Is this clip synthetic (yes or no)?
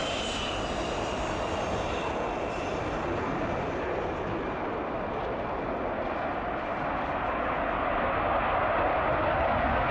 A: no